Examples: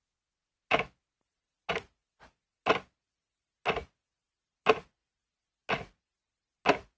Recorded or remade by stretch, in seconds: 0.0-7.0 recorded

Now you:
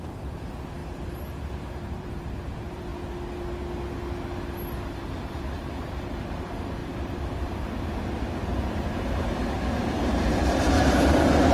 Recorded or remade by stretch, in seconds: 0.0-2.9 remade; 2.9-4.9 recorded; 4.9-11.5 remade